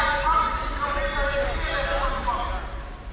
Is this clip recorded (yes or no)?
yes